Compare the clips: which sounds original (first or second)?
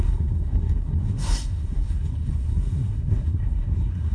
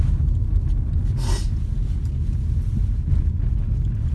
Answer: second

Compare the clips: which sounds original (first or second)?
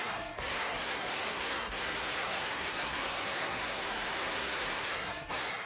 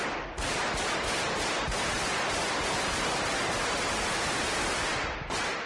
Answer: second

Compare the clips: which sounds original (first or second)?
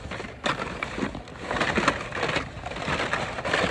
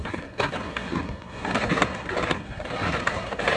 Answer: first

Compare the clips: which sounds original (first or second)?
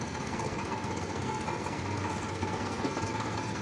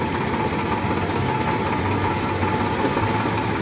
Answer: second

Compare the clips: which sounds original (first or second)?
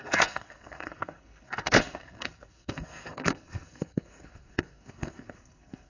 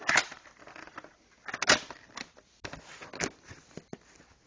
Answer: second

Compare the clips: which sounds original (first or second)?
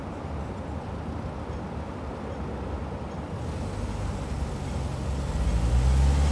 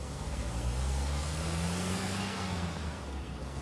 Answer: first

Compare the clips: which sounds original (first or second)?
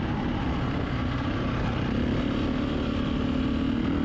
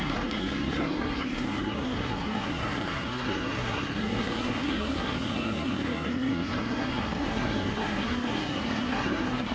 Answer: first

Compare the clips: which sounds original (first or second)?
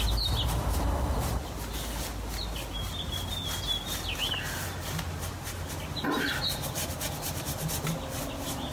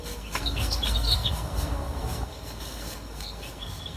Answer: first